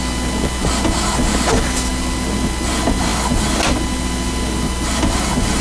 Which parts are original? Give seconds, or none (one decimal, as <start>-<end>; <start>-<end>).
0.0-5.6